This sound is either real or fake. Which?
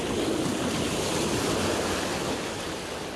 real